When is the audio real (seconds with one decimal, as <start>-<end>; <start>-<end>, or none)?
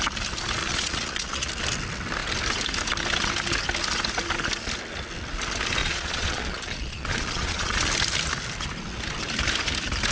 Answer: 0.0-0.6; 1.5-5.8; 7.9-10.1